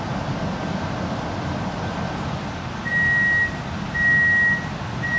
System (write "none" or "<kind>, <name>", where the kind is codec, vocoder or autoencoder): none